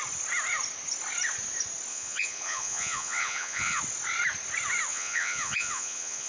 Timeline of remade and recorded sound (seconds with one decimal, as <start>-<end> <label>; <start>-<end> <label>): 0.0-1.9 recorded; 1.9-3.8 remade; 3.8-4.9 recorded; 4.9-6.3 remade